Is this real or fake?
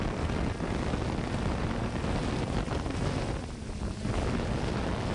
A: real